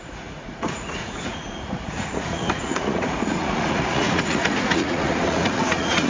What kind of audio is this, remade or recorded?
remade